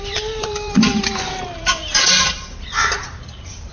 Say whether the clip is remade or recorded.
remade